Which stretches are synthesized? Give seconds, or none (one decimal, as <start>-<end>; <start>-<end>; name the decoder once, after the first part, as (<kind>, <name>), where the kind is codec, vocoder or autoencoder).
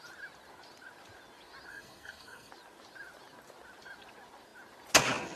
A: 1.7-2.5 (codec, SNAC)